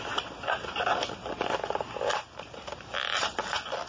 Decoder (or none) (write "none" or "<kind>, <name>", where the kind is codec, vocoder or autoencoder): none